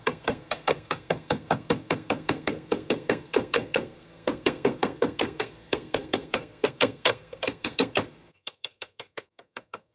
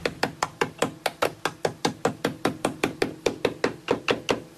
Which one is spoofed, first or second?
first